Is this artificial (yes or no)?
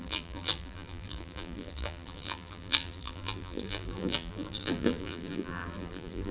yes